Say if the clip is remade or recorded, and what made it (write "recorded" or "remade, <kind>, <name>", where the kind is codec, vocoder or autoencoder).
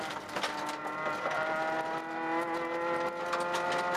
recorded